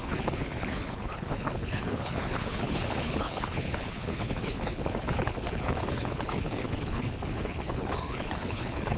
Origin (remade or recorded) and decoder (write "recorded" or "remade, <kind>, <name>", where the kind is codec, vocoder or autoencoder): remade, codec, HILCodec